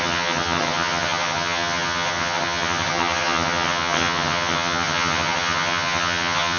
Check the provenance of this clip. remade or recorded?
remade